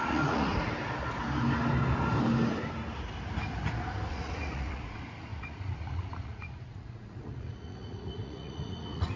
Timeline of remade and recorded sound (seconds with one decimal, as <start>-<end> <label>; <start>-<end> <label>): 0.0-0.5 remade; 0.5-4.1 recorded; 4.1-9.2 remade